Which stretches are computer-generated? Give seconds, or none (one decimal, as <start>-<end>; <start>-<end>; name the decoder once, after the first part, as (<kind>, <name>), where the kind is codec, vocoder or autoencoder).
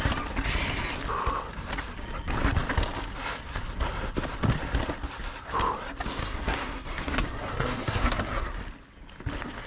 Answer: 6.2-8.6 (codec, SNAC)